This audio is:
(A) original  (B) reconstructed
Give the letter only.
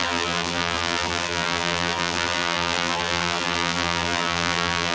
B